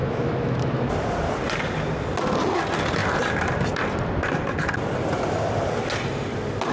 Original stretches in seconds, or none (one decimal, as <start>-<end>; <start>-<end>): 0.9-6.7